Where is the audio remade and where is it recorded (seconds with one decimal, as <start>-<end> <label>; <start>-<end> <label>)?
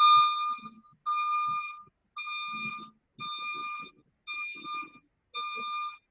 0.0-6.1 recorded